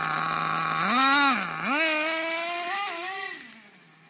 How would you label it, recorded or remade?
recorded